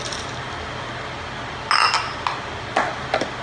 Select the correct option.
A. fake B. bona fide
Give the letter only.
B